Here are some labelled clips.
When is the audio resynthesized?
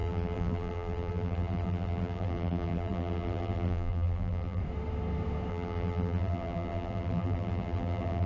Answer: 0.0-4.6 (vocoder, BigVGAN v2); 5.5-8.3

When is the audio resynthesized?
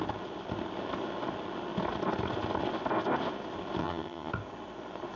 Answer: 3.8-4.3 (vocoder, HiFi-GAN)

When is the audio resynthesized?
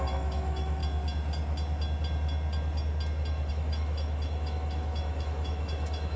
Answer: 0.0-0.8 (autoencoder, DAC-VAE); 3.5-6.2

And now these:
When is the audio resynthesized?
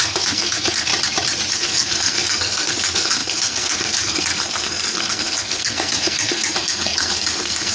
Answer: 0.0-0.9 (codec, SNAC); 1.5-7.7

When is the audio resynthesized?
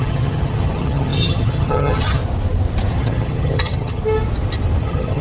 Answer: 0.0-2.2 (vocoder, HiFi-GAN); 2.9-4.0; 4.8-5.2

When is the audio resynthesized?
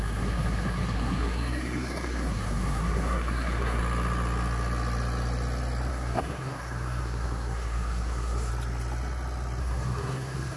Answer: 0.0-3.8 (codec, SNAC); 5.9-8.5; 9.6-10.6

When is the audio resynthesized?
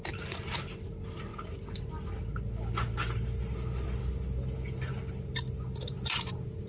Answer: none